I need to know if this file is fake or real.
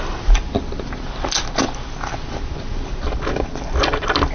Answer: real